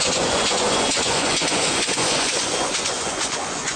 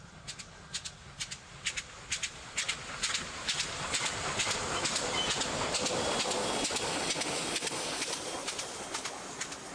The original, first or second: second